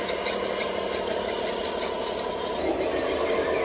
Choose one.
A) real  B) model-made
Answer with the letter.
A